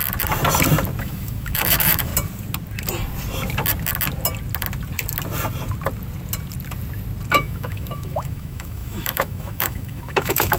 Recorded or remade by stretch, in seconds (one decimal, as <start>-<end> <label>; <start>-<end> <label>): 0.0-1.0 recorded; 1.0-2.1 remade; 2.1-7.3 recorded; 7.3-10.6 remade